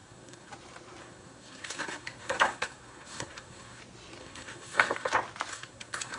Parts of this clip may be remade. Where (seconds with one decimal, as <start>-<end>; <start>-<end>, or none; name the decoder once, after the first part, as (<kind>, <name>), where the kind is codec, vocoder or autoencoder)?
0.0-0.5 (codec, SNAC); 1.0-3.8; 4.2-5.1; 5.5-6.2